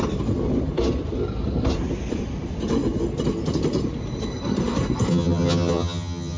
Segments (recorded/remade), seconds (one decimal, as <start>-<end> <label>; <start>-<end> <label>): 0.0-5.1 recorded; 5.1-6.4 remade

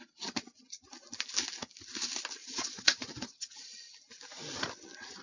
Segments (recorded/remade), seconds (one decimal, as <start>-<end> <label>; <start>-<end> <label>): 0.0-2.4 recorded; 2.4-3.7 remade; 3.7-5.2 recorded

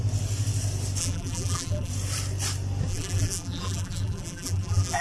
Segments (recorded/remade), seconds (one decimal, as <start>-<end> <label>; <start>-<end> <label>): 0.0-1.0 recorded; 1.0-1.9 remade; 1.9-2.9 recorded; 2.9-5.0 remade